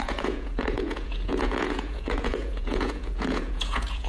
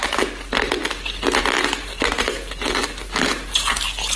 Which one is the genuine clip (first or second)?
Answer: second